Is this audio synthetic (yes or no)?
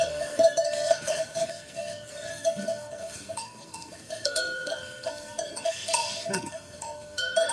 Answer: yes